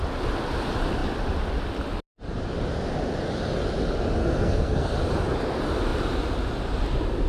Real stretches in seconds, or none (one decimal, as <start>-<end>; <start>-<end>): 0.0-4.2; 4.9-7.3